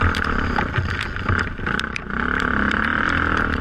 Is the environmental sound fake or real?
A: fake